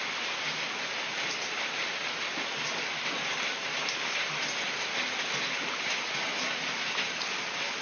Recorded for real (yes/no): yes